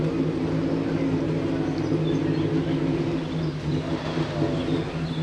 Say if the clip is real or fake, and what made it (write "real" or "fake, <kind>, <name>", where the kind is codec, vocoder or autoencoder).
real